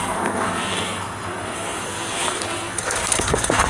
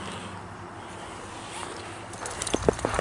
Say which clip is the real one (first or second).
second